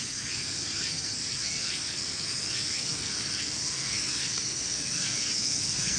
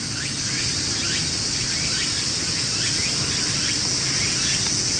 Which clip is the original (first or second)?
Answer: second